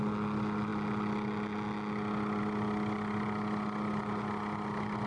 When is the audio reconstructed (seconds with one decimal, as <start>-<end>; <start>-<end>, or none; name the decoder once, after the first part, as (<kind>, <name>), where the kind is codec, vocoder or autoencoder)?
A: none